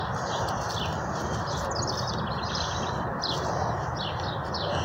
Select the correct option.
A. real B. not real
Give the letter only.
A